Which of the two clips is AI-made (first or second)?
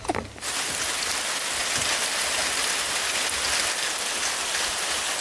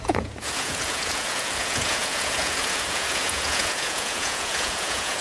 second